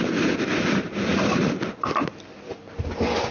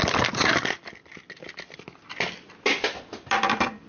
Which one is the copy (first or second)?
first